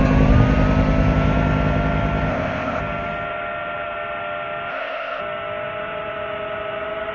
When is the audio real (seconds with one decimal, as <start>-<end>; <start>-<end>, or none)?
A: 0.0-2.3; 2.8-4.7; 5.2-7.1